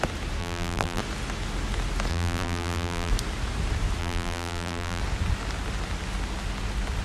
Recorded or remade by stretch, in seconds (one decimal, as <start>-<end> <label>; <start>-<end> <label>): 0.0-0.4 recorded; 0.4-1.0 remade; 1.0-2.1 recorded; 2.1-3.1 remade; 3.1-4.0 recorded; 4.0-5.0 remade; 5.0-7.0 recorded